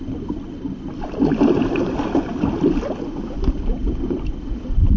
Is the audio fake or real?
real